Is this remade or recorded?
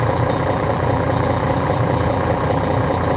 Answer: remade